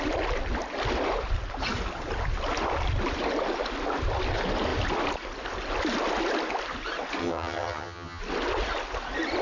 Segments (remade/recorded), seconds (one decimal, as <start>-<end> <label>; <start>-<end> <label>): 0.0-7.2 recorded; 7.2-8.2 remade; 8.2-9.4 recorded